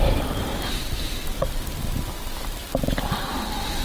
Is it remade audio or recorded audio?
recorded